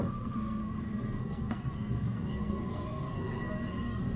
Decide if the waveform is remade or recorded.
remade